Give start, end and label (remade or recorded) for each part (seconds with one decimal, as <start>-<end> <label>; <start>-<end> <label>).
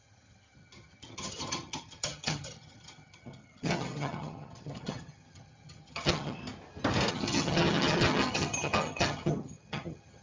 0.0-6.4 remade; 6.4-7.1 recorded; 7.1-10.2 remade